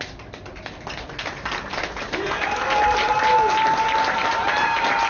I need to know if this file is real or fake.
real